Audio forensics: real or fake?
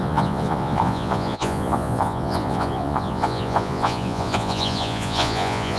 fake